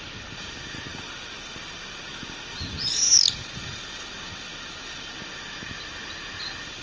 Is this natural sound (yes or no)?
yes